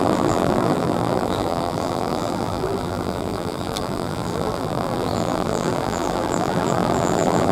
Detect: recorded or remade remade